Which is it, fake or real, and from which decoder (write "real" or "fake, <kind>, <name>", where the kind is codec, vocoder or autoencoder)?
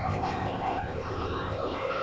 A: fake, codec, ZipCodec